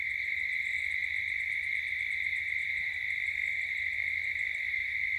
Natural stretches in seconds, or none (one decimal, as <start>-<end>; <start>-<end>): none